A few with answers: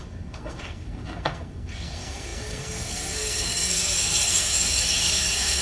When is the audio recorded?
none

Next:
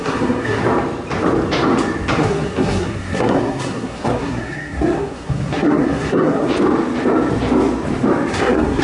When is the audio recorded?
0.6-2.1; 6.5-8.3

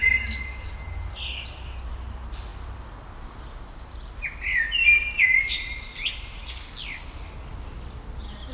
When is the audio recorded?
0.0-8.5

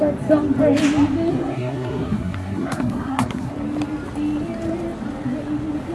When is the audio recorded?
0.0-1.3; 3.5-5.9